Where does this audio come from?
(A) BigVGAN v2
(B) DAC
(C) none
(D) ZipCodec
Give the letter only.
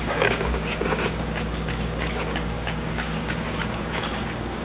B